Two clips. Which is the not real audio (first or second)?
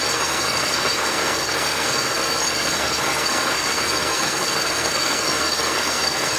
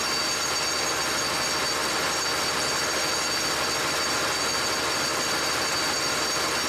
first